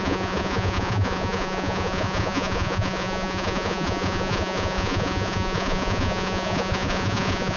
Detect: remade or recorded remade